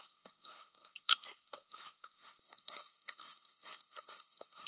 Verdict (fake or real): fake